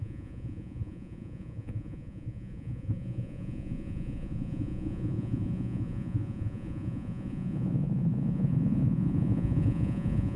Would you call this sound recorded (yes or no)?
no